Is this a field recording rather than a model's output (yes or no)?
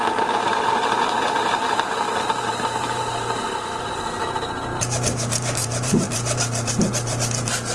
no